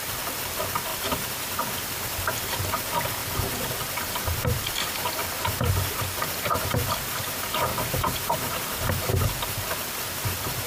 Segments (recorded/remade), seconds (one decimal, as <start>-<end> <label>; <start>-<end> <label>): 0.0-7.7 recorded; 7.7-8.9 remade; 8.9-10.7 recorded